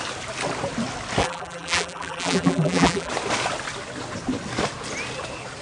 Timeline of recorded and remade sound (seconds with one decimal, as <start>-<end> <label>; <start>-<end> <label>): 0.0-1.2 recorded; 1.2-3.1 remade; 3.1-5.6 recorded